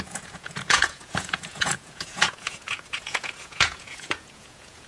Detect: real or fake fake